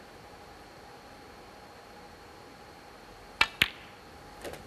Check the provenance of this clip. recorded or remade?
recorded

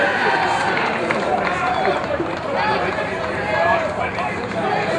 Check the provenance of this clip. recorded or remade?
remade